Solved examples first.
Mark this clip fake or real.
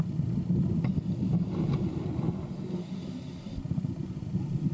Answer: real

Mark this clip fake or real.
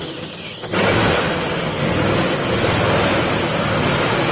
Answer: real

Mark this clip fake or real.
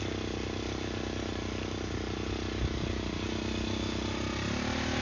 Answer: real